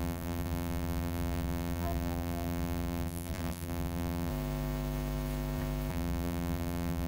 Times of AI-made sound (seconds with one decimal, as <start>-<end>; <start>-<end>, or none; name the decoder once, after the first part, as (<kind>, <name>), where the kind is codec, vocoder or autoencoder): 0.0-4.3 (vocoder, BigVGAN v2); 5.9-7.1

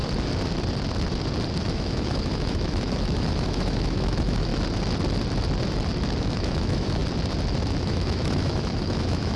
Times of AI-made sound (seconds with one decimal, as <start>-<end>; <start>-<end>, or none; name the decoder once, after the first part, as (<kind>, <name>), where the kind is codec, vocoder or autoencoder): 1.6-4.5 (autoencoder, DAC-VAE); 6.2-7.0; 7.8-9.4